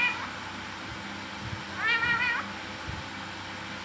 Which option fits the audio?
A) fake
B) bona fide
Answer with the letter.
B